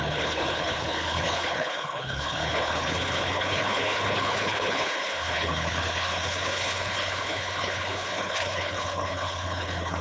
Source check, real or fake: fake